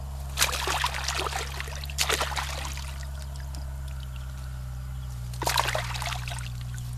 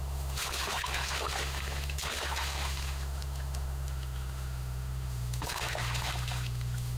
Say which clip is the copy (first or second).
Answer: second